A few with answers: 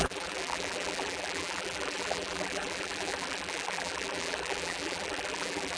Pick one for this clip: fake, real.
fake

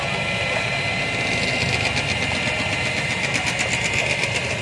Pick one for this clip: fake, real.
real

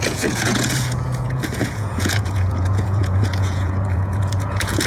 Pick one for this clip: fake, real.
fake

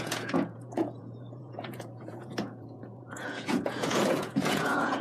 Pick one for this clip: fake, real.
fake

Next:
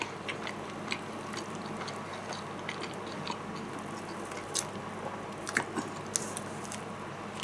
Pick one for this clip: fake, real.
real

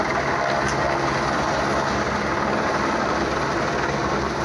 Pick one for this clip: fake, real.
real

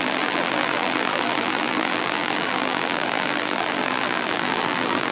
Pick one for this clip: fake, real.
fake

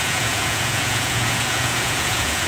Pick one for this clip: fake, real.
fake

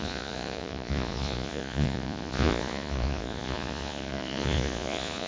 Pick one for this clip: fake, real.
fake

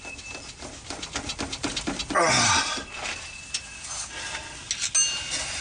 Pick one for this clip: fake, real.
real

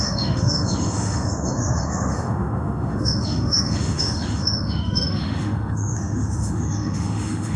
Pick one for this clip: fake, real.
fake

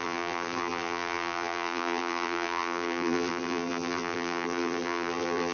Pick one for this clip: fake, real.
fake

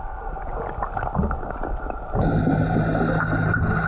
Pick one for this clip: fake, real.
real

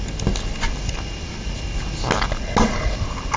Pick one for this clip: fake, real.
real